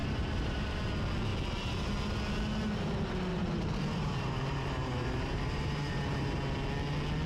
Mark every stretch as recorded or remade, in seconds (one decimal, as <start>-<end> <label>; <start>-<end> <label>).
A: 0.0-0.8 remade; 0.8-3.3 recorded; 3.3-6.5 remade; 6.5-7.3 recorded